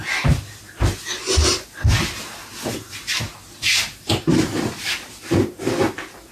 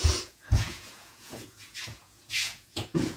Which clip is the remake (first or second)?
second